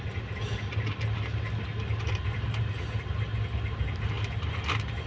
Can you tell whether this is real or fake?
real